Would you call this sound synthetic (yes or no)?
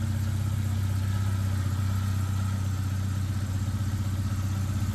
no